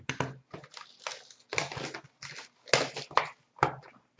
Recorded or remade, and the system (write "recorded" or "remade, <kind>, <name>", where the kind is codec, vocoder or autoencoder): recorded